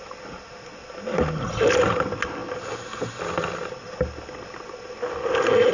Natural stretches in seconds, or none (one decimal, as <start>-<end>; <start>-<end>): 0.0-5.7

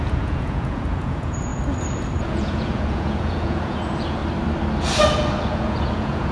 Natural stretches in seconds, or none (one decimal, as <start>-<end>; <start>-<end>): 1.5-2.2; 4.2-5.4

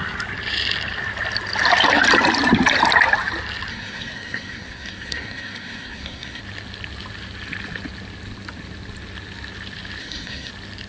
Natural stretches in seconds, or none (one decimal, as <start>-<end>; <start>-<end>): 0.0-3.7; 6.4-10.0; 10.5-10.9

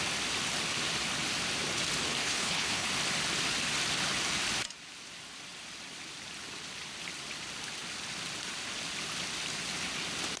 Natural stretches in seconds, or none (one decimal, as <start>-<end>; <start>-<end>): 0.0-2.2; 2.9-10.4

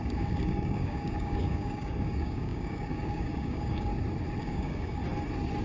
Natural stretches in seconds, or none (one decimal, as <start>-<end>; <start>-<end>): 3.9-4.4; 5.0-5.6

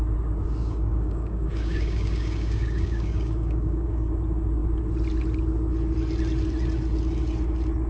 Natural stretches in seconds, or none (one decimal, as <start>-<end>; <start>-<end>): 0.0-0.6; 4.1-7.9

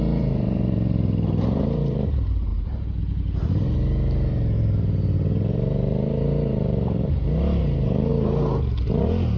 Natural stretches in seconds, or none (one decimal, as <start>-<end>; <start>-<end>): 2.5-3.0; 8.1-9.4

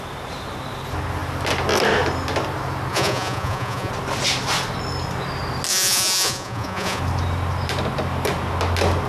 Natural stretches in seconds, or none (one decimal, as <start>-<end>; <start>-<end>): 0.0-2.9; 3.9-5.7; 7.0-9.1